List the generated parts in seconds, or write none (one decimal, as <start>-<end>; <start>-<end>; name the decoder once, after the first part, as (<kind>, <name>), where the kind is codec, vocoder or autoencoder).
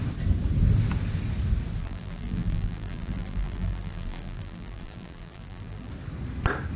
1.8-5.9 (vocoder, BigVGAN v2)